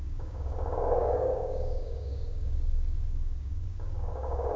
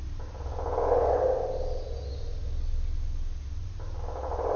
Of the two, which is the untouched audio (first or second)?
second